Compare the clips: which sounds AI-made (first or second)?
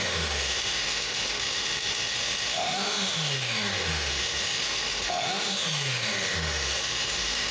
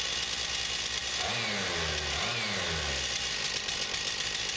first